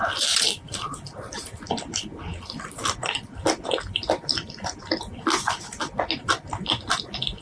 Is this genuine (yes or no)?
yes